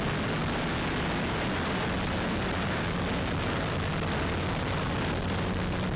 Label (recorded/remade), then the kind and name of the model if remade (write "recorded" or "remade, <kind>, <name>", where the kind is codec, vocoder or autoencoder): recorded